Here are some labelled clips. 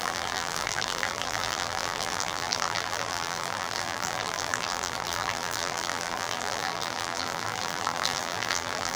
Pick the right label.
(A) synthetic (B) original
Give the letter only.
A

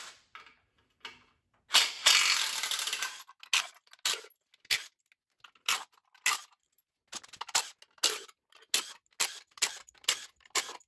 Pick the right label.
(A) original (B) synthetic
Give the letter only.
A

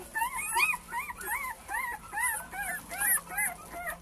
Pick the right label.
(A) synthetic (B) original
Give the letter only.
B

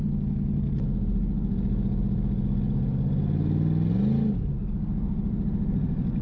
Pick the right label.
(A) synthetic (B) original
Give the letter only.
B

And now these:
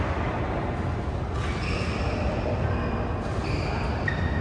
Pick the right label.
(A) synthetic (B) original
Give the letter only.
B